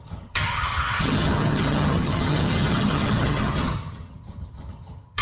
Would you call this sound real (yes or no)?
no